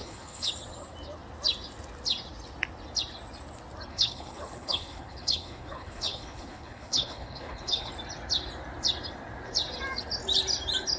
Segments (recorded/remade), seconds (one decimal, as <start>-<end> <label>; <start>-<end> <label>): 0.0-0.5 remade; 0.5-3.9 recorded; 3.9-7.9 remade; 7.9-11.0 recorded